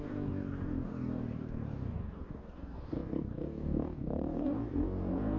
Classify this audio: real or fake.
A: fake